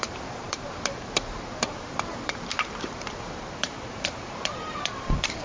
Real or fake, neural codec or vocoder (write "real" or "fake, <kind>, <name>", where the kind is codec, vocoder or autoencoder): fake, vocoder, BigVGAN v2